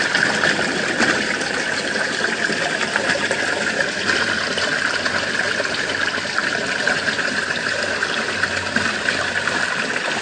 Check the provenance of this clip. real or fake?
fake